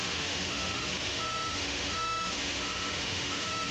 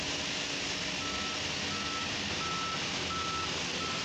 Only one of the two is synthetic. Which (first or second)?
first